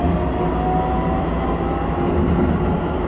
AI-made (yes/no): no